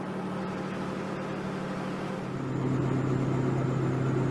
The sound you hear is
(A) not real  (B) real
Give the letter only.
B